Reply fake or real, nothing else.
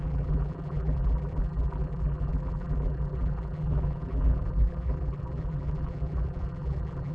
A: fake